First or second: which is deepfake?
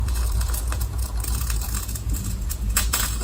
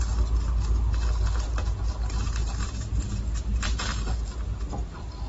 first